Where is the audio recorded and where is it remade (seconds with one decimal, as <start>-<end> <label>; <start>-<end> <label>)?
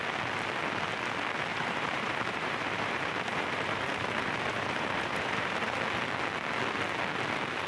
0.0-1.5 recorded; 1.5-5.8 remade; 5.8-7.7 recorded